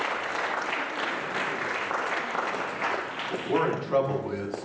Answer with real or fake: real